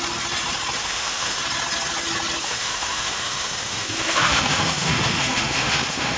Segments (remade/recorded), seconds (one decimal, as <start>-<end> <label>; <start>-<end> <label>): 0.0-0.8 recorded; 0.8-1.4 remade; 1.4-2.4 recorded; 2.4-6.2 remade